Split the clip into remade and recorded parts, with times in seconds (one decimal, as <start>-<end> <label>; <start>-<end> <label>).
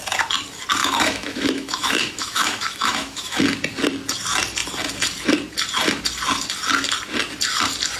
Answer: 0.0-0.8 recorded; 0.8-3.4 remade; 3.4-8.0 recorded